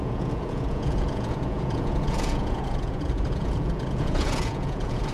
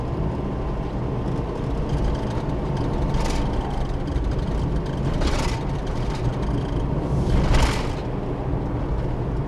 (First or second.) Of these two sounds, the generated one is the first